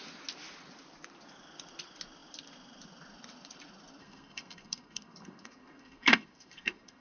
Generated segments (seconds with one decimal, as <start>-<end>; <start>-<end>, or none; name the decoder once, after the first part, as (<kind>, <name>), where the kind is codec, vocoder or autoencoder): 4.0-7.0 (codec, SNAC)